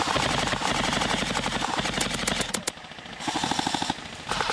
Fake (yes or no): no